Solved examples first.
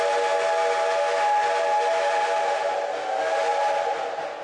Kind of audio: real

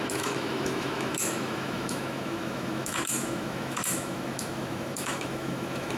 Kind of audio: fake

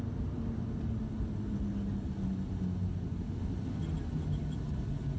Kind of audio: real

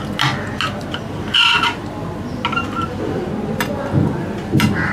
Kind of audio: real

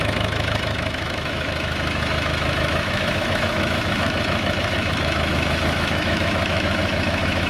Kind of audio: fake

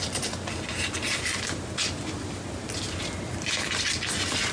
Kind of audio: real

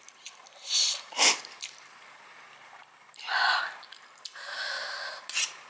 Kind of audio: real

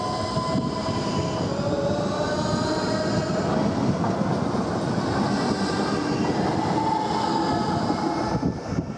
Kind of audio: real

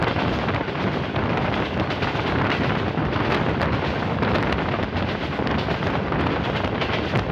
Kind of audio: real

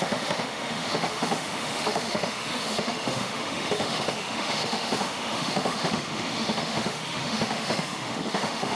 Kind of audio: fake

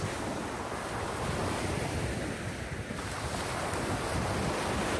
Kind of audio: real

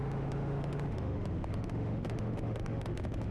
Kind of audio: fake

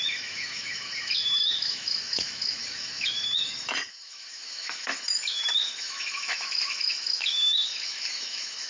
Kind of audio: fake